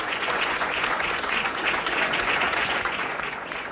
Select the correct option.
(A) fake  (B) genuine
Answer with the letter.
A